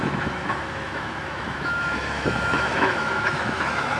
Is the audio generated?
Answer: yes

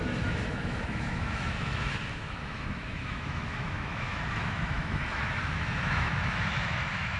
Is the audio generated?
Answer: yes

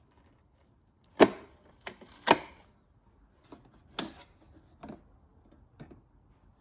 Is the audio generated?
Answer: no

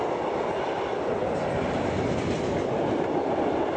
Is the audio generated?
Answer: no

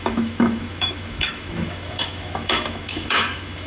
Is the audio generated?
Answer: yes